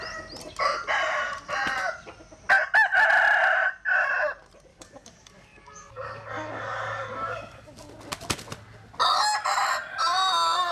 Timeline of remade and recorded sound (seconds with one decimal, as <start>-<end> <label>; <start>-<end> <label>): 0.0-4.7 recorded; 4.7-7.9 remade; 7.9-10.7 recorded

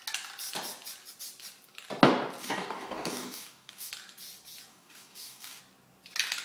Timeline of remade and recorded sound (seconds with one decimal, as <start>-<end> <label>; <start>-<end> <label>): 0.0-2.4 recorded; 2.4-3.9 remade; 3.9-4.7 recorded; 4.7-5.6 remade; 5.6-6.4 recorded

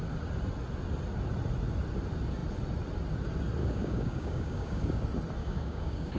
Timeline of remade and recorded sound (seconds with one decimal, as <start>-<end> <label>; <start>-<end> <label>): 0.0-3.6 recorded; 3.6-5.0 remade; 5.0-5.4 recorded; 5.4-6.2 remade

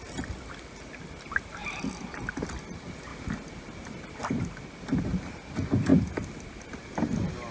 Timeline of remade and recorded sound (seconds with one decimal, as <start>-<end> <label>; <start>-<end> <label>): 0.0-7.5 recorded

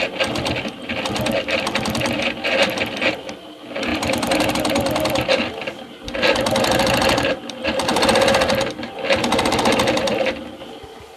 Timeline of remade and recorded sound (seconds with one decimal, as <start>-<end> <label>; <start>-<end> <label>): 0.0-11.2 recorded

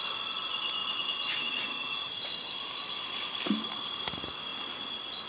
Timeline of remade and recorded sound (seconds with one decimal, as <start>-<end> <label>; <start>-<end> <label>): 0.0-5.3 recorded

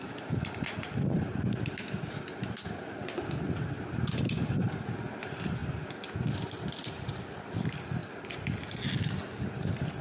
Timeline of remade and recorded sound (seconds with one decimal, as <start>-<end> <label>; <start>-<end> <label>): 0.0-10.0 recorded